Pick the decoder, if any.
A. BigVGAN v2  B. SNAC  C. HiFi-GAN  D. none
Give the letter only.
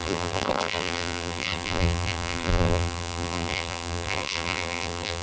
A